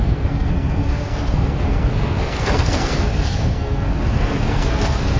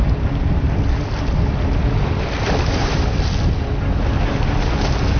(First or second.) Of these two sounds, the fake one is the first